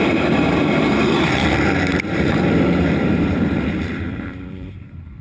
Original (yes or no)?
no